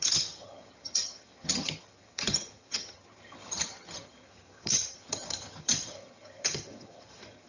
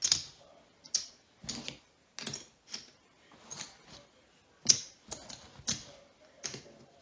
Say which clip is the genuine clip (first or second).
second